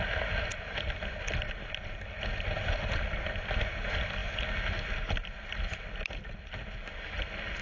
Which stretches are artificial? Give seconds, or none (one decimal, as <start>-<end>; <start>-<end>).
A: none